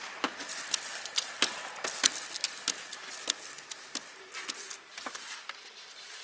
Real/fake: real